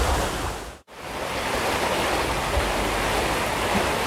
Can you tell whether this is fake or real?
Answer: real